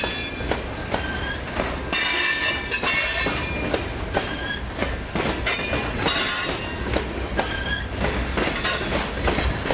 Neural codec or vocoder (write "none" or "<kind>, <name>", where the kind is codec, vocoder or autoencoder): none